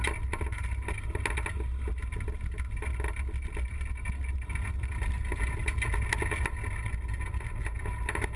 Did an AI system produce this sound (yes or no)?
no